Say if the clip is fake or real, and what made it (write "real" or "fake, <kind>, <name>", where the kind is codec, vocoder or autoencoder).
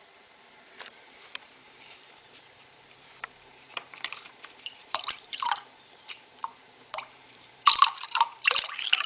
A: fake, vocoder, BigVGAN v2